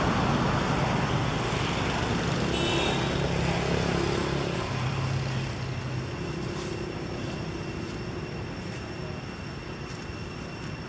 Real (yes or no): yes